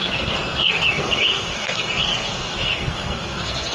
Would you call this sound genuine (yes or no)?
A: no